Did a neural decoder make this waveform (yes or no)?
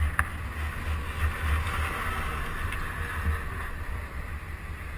no